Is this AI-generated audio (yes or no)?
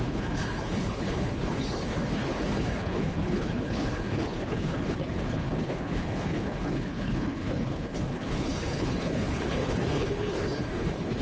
yes